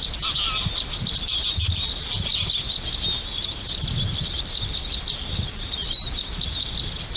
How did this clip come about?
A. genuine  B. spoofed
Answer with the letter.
A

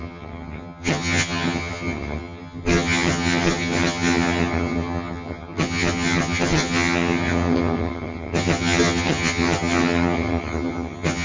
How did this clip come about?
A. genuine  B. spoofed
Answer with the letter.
B